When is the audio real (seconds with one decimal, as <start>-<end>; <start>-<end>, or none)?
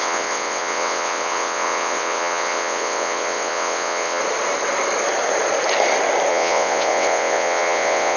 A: 4.2-6.3